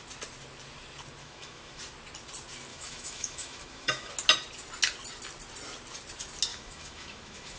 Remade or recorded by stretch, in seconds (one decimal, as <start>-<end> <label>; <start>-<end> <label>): 0.0-1.2 recorded; 1.2-1.8 remade; 1.8-2.7 recorded; 2.7-4.1 remade; 4.1-6.5 recorded; 6.5-7.6 remade